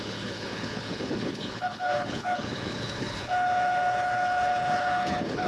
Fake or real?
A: fake